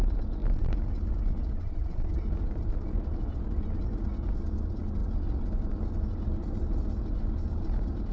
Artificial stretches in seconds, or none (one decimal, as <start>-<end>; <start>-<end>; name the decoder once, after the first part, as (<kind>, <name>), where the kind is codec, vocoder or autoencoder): none